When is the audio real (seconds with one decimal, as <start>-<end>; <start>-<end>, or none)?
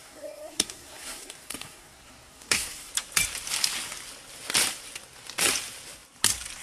2.9-6.6